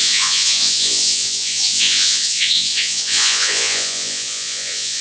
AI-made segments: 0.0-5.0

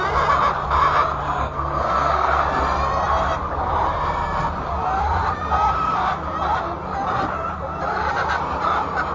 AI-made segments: 1.4-2.4